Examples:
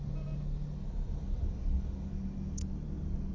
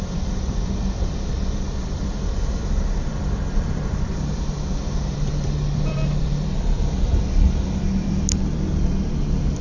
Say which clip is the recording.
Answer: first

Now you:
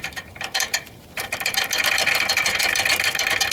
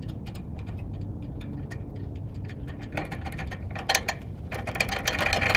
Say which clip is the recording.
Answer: second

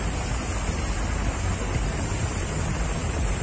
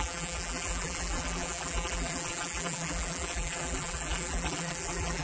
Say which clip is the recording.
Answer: first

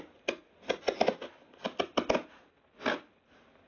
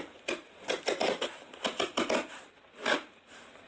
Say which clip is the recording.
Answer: first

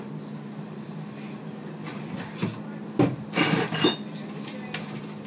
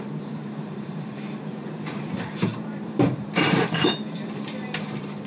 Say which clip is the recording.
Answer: first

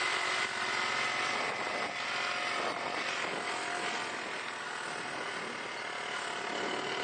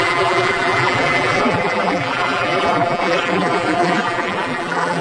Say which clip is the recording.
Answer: first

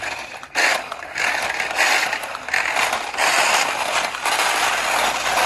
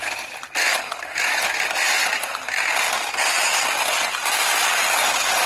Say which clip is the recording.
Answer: second